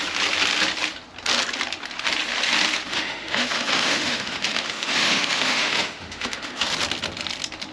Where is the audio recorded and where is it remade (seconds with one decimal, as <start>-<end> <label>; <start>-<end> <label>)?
0.0-2.9 recorded; 2.9-6.7 remade; 6.7-7.7 recorded